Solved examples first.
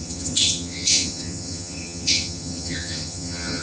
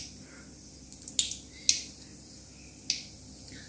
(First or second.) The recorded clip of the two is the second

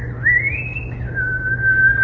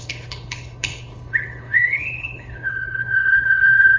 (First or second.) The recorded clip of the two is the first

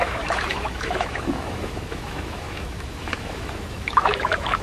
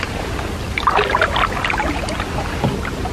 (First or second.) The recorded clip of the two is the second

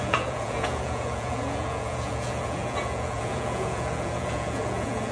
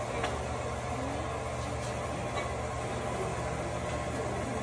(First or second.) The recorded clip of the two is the second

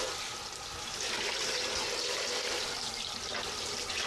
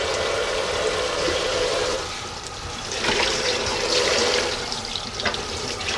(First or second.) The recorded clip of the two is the first